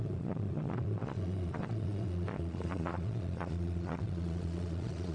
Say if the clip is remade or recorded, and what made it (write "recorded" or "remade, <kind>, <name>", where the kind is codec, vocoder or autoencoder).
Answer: remade, vocoder, Vocos